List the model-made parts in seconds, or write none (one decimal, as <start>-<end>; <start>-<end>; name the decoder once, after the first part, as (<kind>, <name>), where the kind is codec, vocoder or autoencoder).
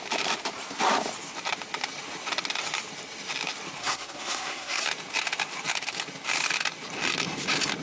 3.8-4.8 (codec, SNAC)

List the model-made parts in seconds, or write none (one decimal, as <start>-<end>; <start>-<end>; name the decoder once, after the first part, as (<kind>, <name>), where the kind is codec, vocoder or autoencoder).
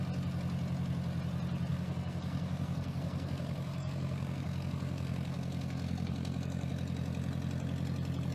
1.7-6.7 (codec, SNAC)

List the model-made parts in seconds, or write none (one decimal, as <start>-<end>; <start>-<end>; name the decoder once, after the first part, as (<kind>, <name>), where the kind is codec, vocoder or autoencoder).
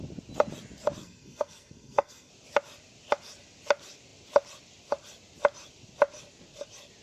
1.0-2.3 (codec, SNAC)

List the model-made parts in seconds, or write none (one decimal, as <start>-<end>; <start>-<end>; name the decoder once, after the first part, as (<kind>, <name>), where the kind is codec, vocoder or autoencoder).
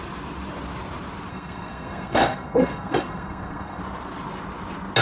1.3-3.8 (codec, SNAC)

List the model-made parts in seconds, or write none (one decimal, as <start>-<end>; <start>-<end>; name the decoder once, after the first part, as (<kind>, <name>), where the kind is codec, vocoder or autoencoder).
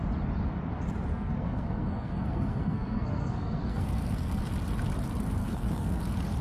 1.1-4.4 (codec, SNAC); 5.4-6.0